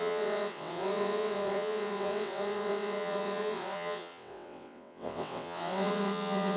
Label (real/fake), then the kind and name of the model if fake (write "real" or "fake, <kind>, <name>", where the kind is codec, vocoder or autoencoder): fake, vocoder, WaveNeXt